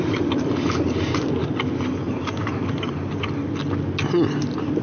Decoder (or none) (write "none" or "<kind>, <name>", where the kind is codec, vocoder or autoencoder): none